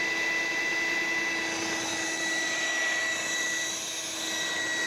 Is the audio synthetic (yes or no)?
no